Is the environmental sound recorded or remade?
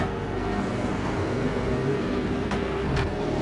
remade